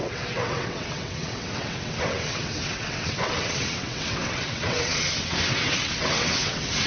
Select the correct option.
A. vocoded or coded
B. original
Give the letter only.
A